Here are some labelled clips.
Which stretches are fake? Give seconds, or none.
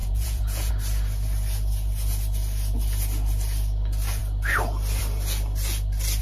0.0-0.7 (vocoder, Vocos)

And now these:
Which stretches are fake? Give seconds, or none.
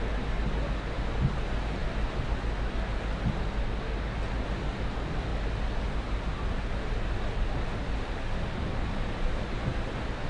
none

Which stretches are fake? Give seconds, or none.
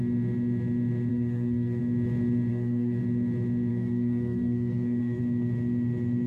1.1-1.8 (codec, SNAC); 2.5-3.0; 3.7-5.2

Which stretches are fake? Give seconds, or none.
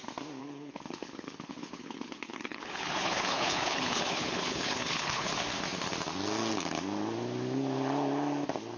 0.4-5.3 (codec, HILCodec)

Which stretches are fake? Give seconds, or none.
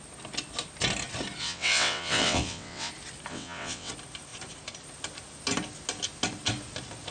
1.4-2.9 (vocoder, WaveNeXt); 3.3-3.9